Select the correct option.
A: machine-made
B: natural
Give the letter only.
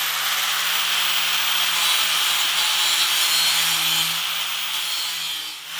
B